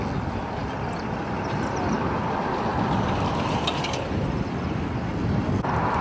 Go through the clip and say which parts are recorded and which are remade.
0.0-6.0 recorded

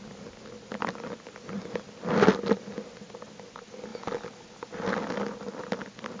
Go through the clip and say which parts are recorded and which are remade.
0.0-6.2 recorded

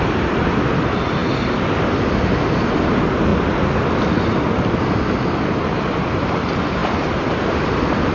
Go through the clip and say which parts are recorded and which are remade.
0.0-6.8 recorded; 6.8-8.1 remade

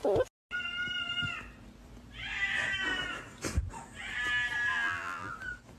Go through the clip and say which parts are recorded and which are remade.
0.0-4.7 recorded; 4.7-5.3 remade; 5.3-5.8 recorded

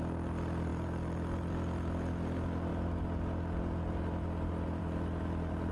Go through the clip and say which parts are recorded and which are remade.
0.0-0.7 recorded; 0.7-1.5 remade; 1.5-5.7 recorded

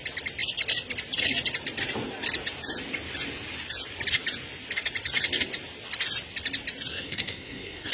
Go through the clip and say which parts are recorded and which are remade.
0.0-6.9 recorded; 6.9-7.9 remade